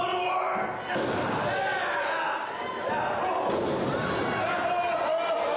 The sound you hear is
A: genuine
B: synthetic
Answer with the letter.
A